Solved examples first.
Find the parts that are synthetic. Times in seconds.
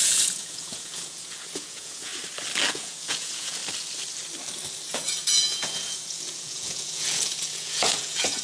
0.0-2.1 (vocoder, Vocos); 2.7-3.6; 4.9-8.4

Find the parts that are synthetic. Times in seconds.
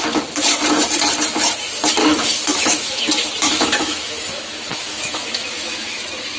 2.0-3.0 (autoencoder, DAC-VAE); 3.4-6.0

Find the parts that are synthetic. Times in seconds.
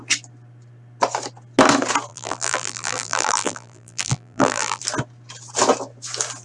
2.1-4.8 (vocoder, BigVGAN v2)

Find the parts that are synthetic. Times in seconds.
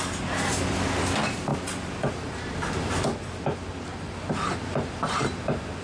none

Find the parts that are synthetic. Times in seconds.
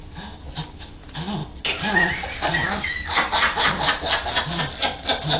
none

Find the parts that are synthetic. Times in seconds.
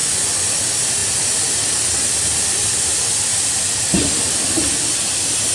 0.0-0.5 (vocoder, Vocos)